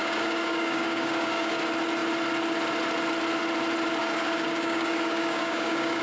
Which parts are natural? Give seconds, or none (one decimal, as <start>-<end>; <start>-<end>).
1.6-4.0